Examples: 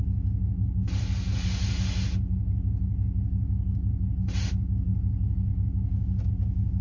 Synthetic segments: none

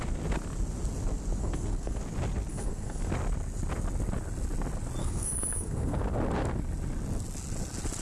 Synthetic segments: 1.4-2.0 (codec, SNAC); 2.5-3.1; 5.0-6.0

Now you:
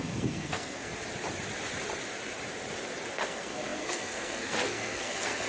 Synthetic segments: 0.0-0.9 (codec, SNAC); 3.1-5.5

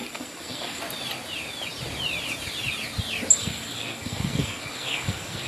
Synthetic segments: 0.0-0.8 (codec, SNAC); 3.4-5.5